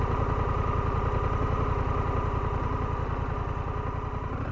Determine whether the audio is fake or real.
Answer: real